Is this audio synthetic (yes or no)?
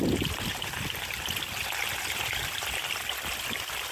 no